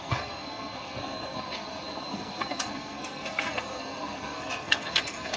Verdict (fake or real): fake